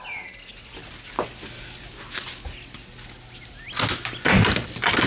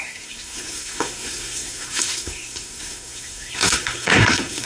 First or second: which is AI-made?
second